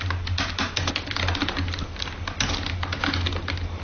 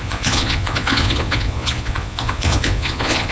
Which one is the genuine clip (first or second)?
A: first